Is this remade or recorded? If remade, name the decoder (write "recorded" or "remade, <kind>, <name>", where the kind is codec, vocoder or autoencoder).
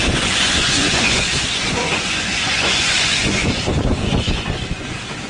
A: remade, vocoder, Vocos